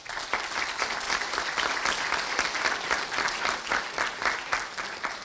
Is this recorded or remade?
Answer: recorded